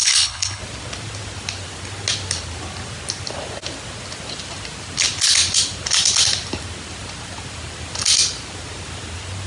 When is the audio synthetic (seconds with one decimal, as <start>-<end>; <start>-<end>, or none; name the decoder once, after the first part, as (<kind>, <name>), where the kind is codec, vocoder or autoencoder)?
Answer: 0.0-0.6 (codec, HILCodec)